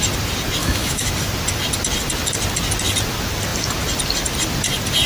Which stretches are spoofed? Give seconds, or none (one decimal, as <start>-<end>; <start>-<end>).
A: 0.6-1.1